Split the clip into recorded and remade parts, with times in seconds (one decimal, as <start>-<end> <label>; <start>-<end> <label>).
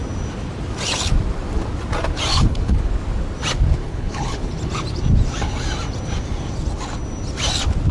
0.0-2.3 recorded; 2.3-2.9 remade; 2.9-3.8 recorded; 3.8-4.5 remade; 4.5-7.9 recorded